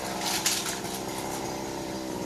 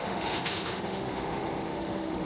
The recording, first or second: first